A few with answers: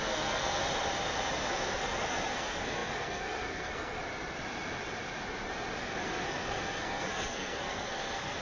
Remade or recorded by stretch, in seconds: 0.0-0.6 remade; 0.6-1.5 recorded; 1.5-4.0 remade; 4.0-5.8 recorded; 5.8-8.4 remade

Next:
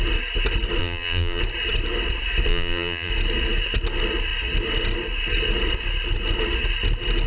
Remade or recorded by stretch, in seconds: 0.0-0.8 recorded; 0.8-1.4 remade; 1.4-2.5 recorded; 2.5-3.1 remade; 3.1-7.3 recorded